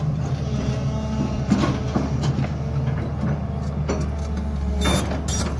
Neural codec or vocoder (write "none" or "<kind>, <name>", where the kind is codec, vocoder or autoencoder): none